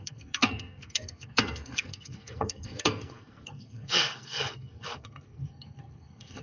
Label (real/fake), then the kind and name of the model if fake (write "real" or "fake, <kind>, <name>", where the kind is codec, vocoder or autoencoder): fake, codec, SNAC